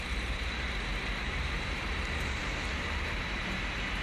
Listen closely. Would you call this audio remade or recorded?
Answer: remade